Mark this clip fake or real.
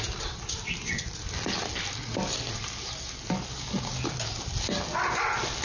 real